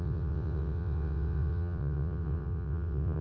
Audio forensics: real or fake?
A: fake